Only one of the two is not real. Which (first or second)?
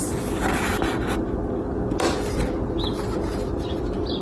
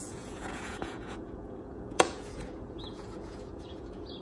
second